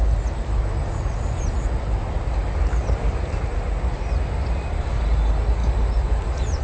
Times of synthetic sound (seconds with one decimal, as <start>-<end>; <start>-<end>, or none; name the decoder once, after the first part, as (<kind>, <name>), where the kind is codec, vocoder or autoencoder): 2.0-4.9 (vocoder, BigVGAN v2); 5.6-6.6